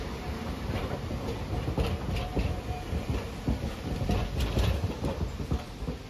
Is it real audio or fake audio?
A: real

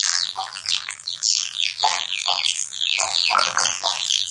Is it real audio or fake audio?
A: fake